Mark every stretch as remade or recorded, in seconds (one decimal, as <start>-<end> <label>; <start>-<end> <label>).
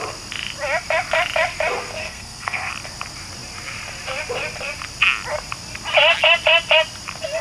0.0-2.0 recorded; 2.0-2.7 remade; 2.7-7.4 recorded